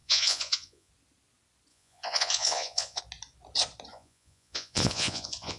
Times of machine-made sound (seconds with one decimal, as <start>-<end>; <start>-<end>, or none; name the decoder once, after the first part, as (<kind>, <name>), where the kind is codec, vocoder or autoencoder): 0.0-0.9 (vocoder, Vocos); 1.7-3.0; 3.9-5.6